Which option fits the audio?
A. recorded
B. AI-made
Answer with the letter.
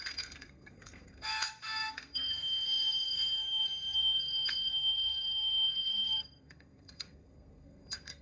B